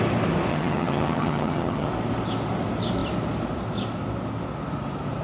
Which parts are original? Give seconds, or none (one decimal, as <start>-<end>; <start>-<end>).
0.0-0.5; 1.9-5.2